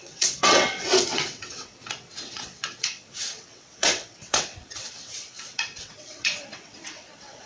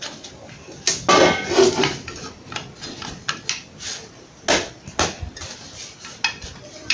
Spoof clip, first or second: first